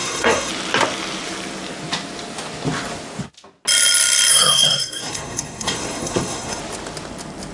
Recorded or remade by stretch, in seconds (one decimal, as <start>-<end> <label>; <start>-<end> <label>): 0.0-0.5 remade; 0.5-4.3 recorded; 4.3-6.6 remade; 6.6-7.5 recorded